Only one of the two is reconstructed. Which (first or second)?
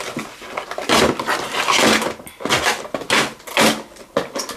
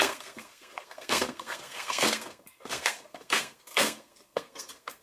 second